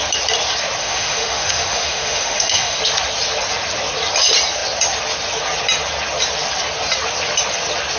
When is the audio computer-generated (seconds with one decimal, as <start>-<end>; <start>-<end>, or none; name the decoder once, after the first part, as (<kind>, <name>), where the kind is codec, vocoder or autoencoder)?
0.8-2.8 (autoencoder, DAC-VAE)